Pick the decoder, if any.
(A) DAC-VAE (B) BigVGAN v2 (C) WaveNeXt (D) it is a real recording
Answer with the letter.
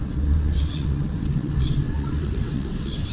C